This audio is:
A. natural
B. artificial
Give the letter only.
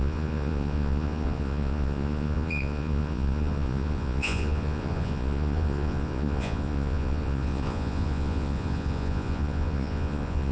B